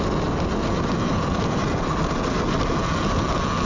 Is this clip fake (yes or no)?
no